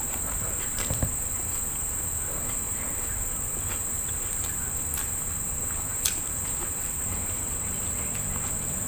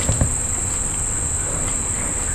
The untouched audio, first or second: second